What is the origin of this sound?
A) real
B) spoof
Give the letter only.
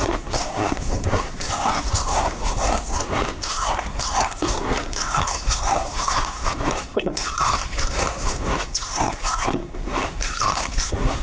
B